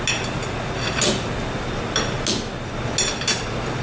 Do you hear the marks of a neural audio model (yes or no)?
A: no